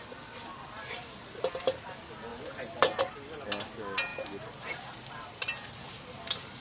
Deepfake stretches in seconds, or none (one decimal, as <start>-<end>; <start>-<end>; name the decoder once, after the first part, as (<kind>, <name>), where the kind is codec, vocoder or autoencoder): 2.3-3.0 (vocoder, BigVGAN v2); 4.1-5.4